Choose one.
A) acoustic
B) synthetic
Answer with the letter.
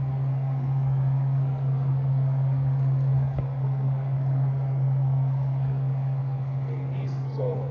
B